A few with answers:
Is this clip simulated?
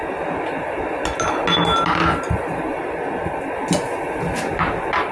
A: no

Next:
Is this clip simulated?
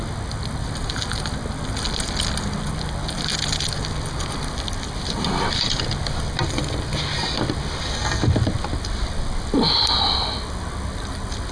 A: no